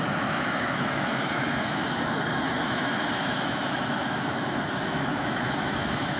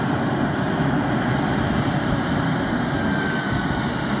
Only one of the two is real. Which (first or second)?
second